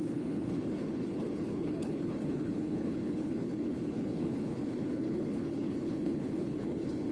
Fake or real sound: fake